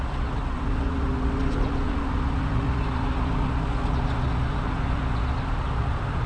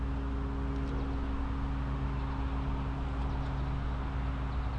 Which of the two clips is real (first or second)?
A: second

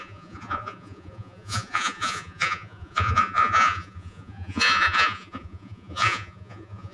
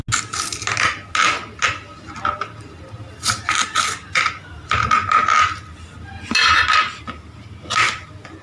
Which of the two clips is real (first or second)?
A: second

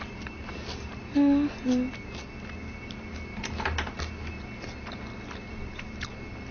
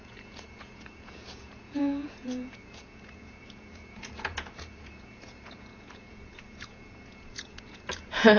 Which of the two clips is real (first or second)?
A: first